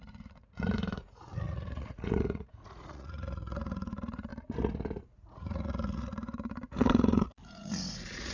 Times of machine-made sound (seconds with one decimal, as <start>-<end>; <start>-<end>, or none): 0.0-4.3; 5.1-8.3